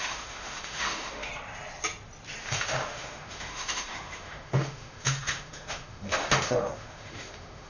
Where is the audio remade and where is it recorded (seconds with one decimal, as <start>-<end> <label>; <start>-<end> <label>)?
0.0-1.3 remade; 1.3-2.4 recorded; 2.4-7.7 remade